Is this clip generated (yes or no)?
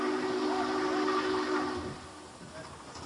no